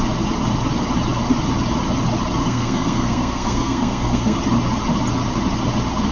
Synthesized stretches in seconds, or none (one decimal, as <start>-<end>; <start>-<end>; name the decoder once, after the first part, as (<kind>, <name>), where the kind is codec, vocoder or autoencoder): 2.4-4.4 (codec, SNAC)